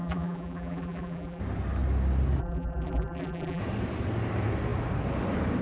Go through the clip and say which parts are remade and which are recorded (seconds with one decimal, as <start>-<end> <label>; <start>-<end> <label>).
0.0-1.4 remade; 1.4-2.4 recorded; 2.4-3.6 remade; 3.6-5.6 recorded